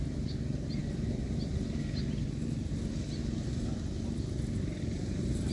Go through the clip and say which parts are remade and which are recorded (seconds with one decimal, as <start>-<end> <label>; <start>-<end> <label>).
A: 0.0-5.5 recorded